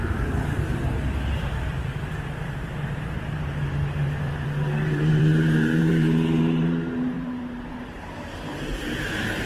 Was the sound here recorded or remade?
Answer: remade